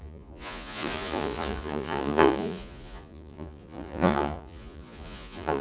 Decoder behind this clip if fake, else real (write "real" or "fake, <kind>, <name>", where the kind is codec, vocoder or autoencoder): fake, vocoder, Vocos